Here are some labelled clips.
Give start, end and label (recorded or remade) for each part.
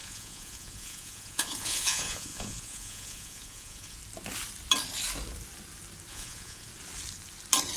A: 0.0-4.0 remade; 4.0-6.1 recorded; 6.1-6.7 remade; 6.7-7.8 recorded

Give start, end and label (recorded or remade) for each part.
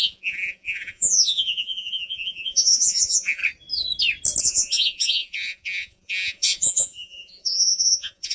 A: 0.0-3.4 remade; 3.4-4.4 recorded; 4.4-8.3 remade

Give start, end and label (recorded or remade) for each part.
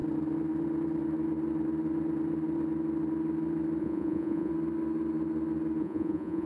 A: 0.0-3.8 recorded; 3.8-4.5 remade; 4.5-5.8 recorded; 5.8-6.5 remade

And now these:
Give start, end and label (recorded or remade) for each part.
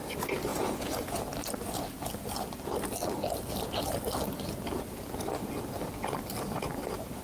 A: 0.0-0.5 recorded; 0.5-1.2 remade; 1.2-7.2 recorded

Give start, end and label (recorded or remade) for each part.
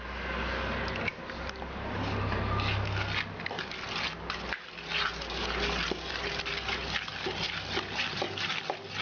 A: 0.0-9.0 recorded